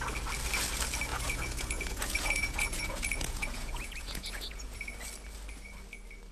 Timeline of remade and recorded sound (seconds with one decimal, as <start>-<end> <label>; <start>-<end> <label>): 0.0-1.1 recorded; 1.1-4.9 remade; 4.9-6.3 recorded